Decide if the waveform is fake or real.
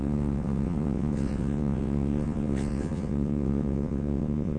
fake